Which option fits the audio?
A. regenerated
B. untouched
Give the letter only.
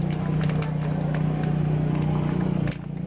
B